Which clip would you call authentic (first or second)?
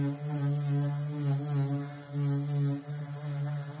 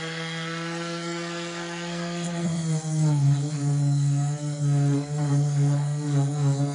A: first